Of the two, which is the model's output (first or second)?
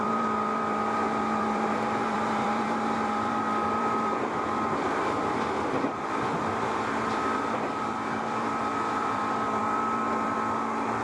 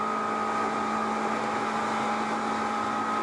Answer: first